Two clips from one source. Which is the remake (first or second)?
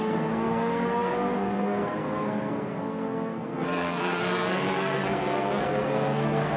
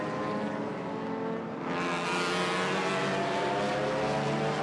first